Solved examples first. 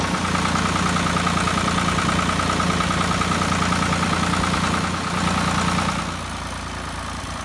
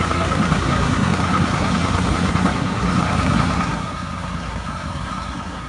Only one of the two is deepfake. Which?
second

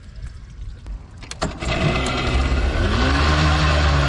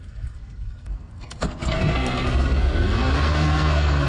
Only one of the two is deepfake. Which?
second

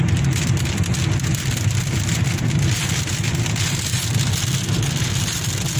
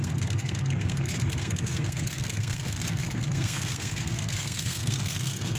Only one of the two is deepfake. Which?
second